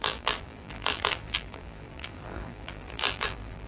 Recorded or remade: remade